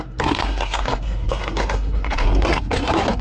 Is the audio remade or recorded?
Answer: remade